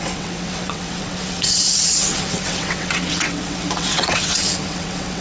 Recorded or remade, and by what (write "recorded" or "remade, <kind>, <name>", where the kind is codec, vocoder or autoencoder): remade, vocoder, WaveNeXt